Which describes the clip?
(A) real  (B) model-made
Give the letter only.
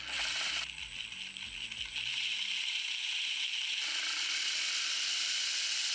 A